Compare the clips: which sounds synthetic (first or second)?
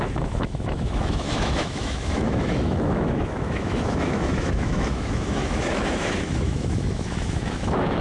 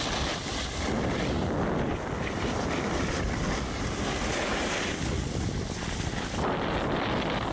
first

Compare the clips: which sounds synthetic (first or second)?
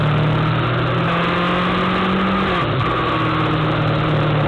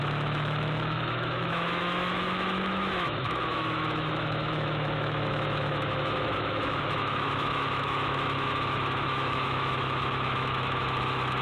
second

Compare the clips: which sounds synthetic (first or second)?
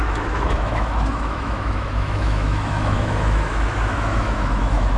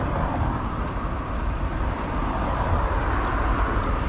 first